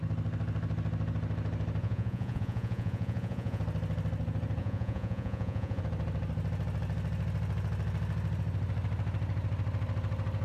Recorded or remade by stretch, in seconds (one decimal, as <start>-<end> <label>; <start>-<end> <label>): 0.0-1.8 recorded; 1.8-3.6 remade; 3.6-4.6 recorded; 4.6-5.8 remade; 5.8-10.4 recorded